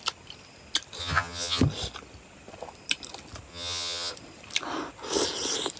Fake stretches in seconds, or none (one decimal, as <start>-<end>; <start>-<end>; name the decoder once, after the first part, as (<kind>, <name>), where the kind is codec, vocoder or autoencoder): 1.0-1.6 (vocoder, HiFi-GAN); 3.5-4.1